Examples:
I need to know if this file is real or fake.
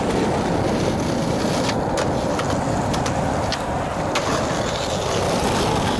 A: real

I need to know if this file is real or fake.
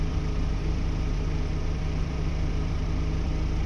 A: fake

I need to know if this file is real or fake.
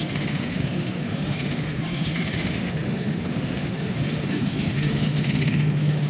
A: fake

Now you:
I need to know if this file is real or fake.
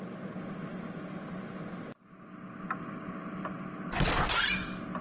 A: real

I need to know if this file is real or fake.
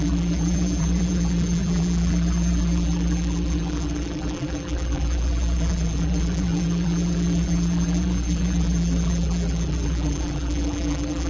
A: fake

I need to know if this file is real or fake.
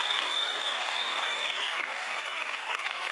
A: fake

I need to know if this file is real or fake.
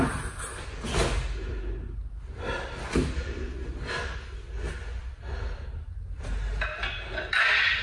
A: real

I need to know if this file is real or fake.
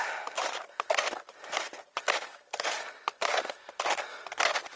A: real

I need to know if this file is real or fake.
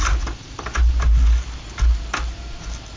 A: real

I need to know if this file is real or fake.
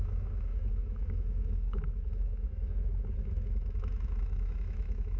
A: fake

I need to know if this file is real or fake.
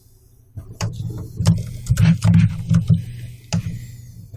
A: real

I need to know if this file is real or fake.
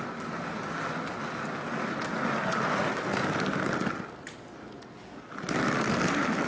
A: real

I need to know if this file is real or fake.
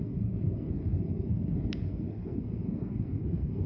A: fake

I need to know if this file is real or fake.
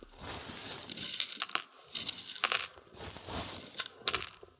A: real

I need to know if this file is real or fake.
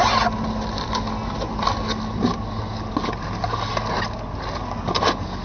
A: real